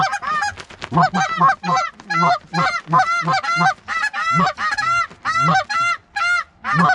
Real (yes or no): yes